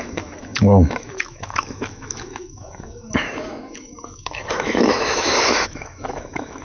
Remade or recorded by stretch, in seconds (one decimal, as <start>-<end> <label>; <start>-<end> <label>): 0.0-6.6 remade